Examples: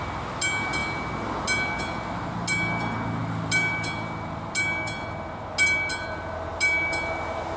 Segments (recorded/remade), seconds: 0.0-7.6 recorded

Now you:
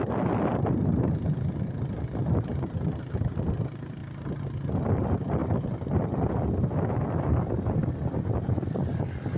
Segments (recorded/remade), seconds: 0.0-4.0 remade; 4.0-4.7 recorded; 4.7-7.8 remade; 7.8-8.8 recorded; 8.8-9.4 remade

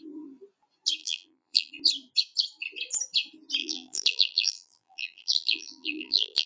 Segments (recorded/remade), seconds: 0.0-1.0 recorded; 1.0-1.7 remade; 1.7-3.6 recorded; 3.6-6.5 remade

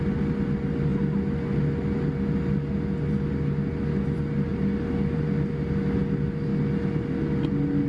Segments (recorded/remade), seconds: 0.0-7.9 recorded

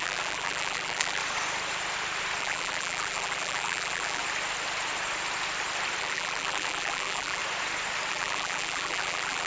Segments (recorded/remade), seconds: 0.0-1.2 remade; 1.2-2.4 recorded; 2.4-4.2 remade; 4.2-6.0 recorded; 6.0-7.4 remade; 7.4-8.1 recorded; 8.1-9.5 remade